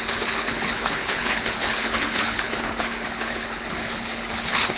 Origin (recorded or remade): remade